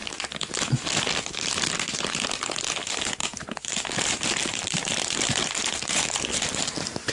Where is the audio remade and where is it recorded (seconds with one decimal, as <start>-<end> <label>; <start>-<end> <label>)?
0.0-3.2 recorded; 3.2-6.2 remade; 6.2-7.1 recorded